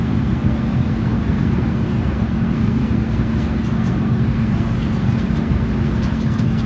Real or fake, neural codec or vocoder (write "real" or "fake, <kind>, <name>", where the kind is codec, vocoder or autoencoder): fake, codec, SNAC